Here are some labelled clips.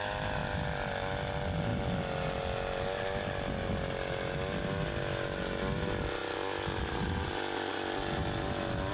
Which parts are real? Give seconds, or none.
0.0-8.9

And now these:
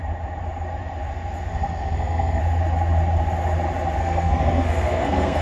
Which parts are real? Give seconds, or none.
0.0-1.5; 2.4-4.0